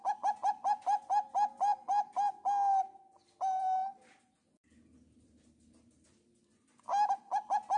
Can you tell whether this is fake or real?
real